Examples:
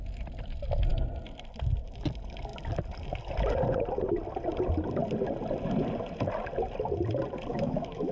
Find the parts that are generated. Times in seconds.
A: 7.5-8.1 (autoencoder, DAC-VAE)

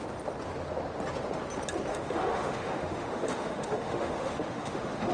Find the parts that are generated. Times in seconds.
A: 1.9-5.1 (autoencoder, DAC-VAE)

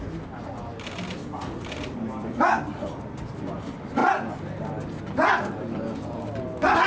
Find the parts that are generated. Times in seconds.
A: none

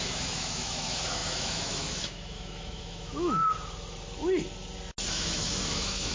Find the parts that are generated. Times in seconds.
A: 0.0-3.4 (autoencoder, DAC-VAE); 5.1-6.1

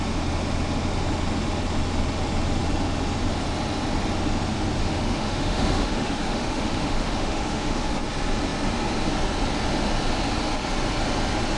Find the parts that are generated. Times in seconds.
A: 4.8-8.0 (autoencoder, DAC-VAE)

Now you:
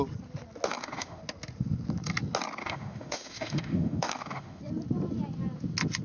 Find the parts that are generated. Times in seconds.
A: 0.7-1.2 (autoencoder, DAC-VAE); 2.6-4.6

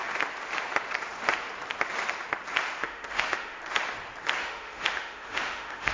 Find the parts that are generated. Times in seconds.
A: 2.8-3.6 (autoencoder, DAC-VAE); 4.4-5.9